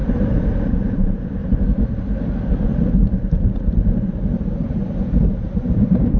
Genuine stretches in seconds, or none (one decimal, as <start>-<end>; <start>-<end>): 1.4-4.5